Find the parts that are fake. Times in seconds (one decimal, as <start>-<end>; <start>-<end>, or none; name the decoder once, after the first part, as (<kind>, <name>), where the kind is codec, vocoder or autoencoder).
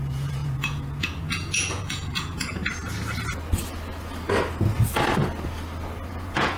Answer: 0.0-2.6 (vocoder, Vocos); 6.1-6.6